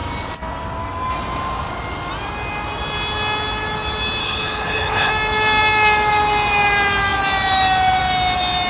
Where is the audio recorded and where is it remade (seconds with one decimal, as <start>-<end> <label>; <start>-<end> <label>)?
0.0-4.2 recorded; 4.2-5.1 remade; 5.1-8.7 recorded